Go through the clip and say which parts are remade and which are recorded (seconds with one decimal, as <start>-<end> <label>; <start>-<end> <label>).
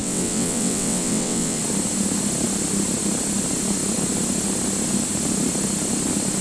0.0-1.6 remade; 1.6-6.4 recorded